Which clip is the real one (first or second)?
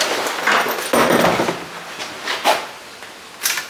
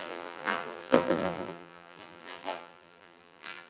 first